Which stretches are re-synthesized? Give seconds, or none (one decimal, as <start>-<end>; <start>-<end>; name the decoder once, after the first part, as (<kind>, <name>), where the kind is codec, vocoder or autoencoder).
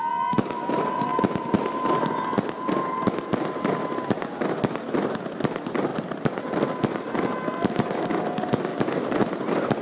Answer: none